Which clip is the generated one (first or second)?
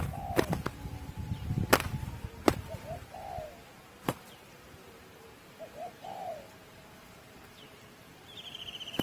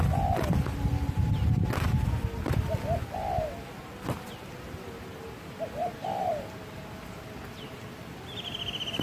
first